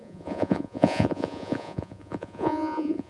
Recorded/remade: remade